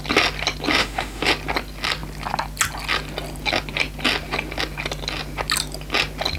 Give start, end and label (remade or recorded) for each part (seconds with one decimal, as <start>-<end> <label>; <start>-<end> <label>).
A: 0.0-0.8 recorded; 0.8-1.3 remade; 1.3-6.4 recorded